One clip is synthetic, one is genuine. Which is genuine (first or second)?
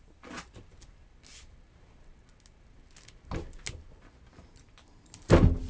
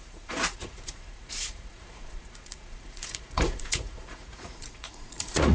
first